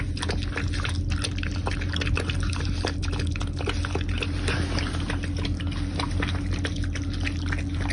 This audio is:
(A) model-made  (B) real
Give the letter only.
B